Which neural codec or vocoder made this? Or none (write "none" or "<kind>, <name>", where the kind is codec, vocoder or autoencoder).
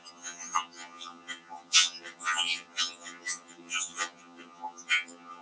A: vocoder, HiFi-GAN